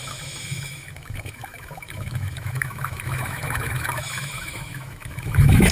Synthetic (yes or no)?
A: yes